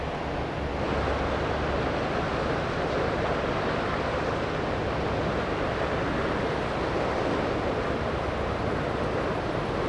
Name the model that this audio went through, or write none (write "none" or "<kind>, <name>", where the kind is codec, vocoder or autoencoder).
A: none